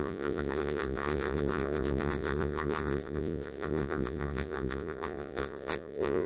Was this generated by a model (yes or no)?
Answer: yes